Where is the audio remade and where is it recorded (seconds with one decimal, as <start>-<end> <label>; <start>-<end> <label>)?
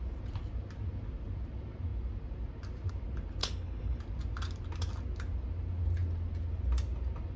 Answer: 0.0-3.4 recorded; 3.4-4.0 remade; 4.0-7.4 recorded